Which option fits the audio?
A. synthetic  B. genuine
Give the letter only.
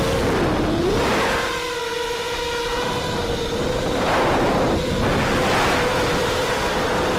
B